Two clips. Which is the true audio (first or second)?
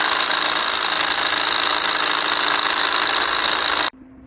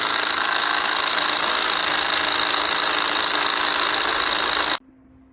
second